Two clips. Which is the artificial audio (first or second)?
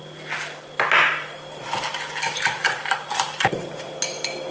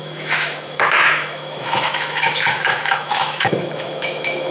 second